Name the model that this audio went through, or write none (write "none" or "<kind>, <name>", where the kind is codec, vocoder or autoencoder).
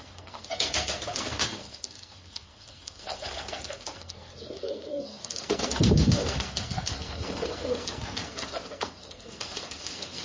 codec, SNAC